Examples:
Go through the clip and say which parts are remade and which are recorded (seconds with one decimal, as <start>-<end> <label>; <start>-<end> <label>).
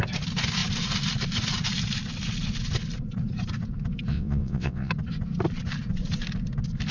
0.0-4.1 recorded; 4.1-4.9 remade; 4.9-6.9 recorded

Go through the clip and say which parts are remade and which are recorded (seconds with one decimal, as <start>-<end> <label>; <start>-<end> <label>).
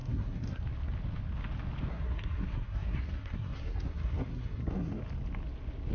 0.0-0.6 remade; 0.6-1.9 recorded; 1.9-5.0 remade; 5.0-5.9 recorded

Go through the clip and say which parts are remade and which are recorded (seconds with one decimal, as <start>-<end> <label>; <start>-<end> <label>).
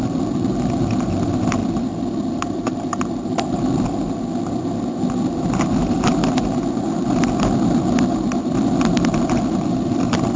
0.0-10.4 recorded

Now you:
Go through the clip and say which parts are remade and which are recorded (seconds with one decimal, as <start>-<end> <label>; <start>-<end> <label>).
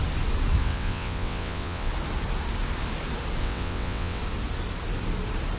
0.0-0.6 recorded; 0.6-1.9 remade; 1.9-3.4 recorded; 3.4-4.2 remade; 4.2-5.6 recorded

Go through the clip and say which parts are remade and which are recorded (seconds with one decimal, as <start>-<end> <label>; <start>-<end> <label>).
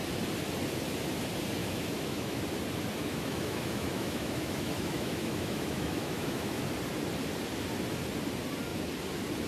0.0-1.6 recorded; 1.6-2.4 remade; 2.4-3.0 recorded; 3.0-6.6 remade; 6.6-9.5 recorded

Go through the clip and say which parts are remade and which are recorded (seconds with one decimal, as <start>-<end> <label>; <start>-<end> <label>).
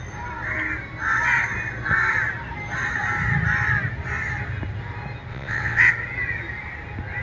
0.0-5.3 recorded; 5.3-5.9 remade; 5.9-7.2 recorded